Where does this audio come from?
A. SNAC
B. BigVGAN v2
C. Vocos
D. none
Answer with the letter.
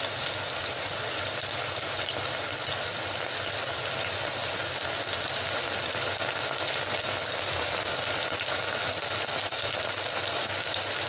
D